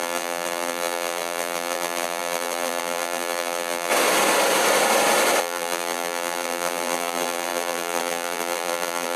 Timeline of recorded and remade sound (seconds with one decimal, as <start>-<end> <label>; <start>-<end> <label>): 0.0-3.9 remade; 3.9-5.4 recorded; 5.4-9.2 remade